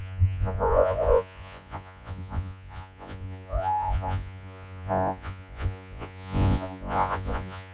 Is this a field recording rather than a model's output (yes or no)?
no